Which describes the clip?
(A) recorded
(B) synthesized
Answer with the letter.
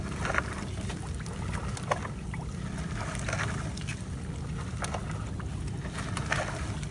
A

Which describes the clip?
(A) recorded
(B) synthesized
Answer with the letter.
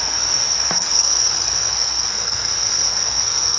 B